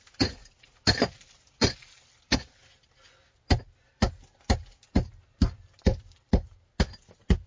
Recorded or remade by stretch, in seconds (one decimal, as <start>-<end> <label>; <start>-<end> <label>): 0.0-7.5 recorded